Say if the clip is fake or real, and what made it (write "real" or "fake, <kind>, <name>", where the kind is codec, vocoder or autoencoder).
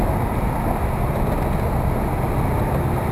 real